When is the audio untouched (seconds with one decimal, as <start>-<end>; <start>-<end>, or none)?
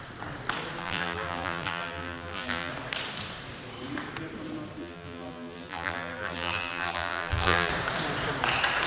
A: 0.0-0.8; 2.7-4.8; 7.7-8.9